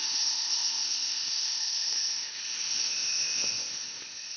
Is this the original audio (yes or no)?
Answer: no